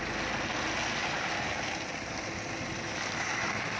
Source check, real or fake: real